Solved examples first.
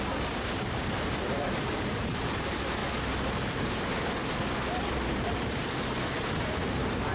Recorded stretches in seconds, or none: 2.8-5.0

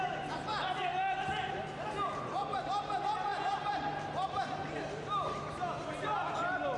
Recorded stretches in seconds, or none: 0.0-3.3; 4.4-6.8

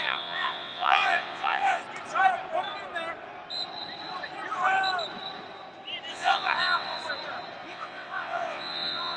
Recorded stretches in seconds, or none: 1.8-6.1; 7.0-7.7

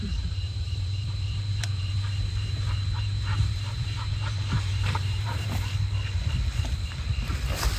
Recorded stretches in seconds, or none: 5.7-7.8

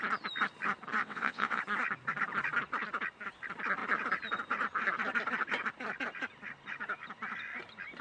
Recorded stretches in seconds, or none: 0.0-1.0; 1.6-8.0

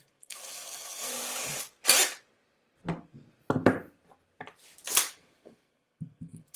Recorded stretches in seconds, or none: 1.1-5.1